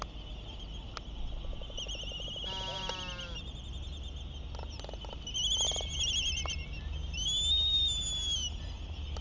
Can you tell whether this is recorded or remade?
recorded